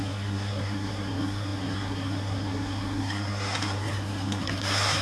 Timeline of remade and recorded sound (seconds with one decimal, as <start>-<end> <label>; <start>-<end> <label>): 0.0-5.0 remade